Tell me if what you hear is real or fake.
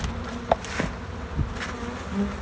real